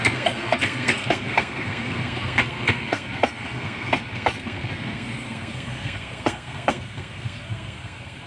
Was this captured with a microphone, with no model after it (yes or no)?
no